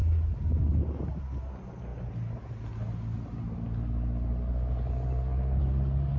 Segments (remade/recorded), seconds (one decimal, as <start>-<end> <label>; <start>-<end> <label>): 0.0-6.2 recorded